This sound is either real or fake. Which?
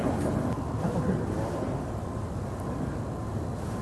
real